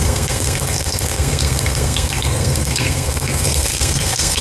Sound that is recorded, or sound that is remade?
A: remade